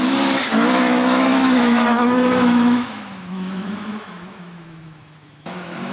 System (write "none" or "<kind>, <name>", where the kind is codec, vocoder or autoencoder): autoencoder, DAC-VAE